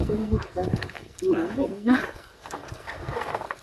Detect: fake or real fake